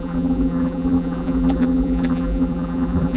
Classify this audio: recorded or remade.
remade